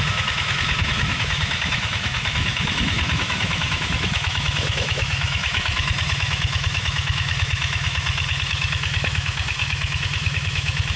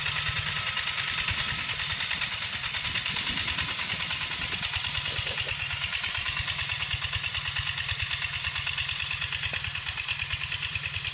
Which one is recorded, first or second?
second